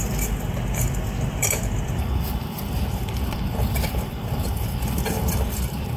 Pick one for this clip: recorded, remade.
remade